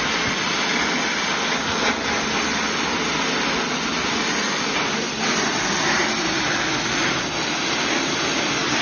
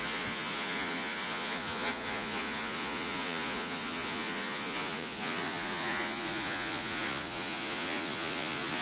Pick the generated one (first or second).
second